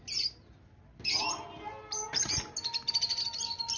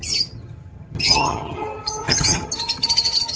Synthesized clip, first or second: second